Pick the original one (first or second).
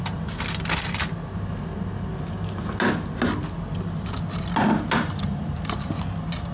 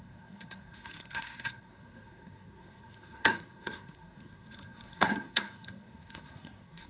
first